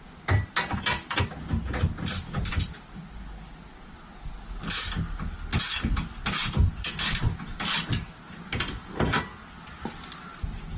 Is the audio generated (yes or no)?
no